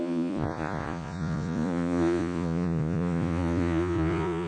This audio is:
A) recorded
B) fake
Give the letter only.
B